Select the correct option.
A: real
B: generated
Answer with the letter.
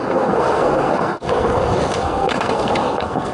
B